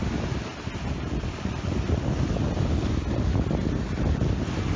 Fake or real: real